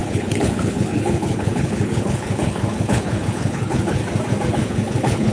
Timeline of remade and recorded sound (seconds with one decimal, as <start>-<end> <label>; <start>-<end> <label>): 0.0-4.0 remade; 4.0-4.5 recorded; 4.5-5.3 remade